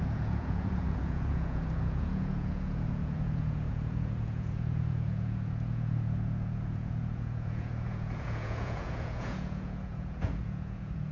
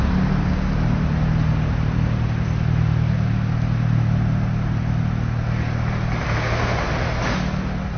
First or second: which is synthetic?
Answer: first